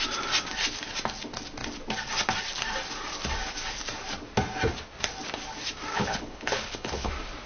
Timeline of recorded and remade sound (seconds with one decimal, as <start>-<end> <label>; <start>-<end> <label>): 0.0-5.9 recorded; 5.9-7.1 remade; 7.1-7.5 recorded

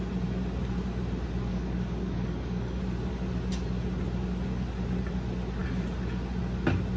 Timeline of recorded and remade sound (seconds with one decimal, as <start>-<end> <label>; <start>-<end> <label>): 0.0-1.5 recorded; 1.5-2.8 remade; 2.8-7.0 recorded

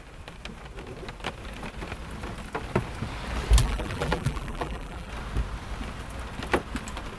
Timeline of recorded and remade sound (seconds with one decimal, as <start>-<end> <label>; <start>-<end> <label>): 0.0-3.6 recorded; 3.6-5.1 remade; 5.1-7.2 recorded

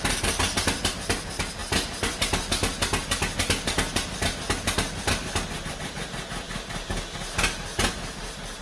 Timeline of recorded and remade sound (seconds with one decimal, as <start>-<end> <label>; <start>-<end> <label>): 0.0-8.6 recorded

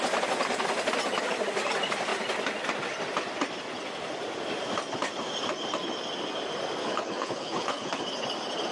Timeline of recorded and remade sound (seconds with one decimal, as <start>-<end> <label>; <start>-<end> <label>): 0.0-6.8 recorded; 6.8-8.0 remade; 8.0-8.7 recorded